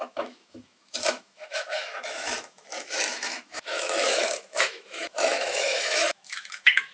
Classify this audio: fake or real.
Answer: fake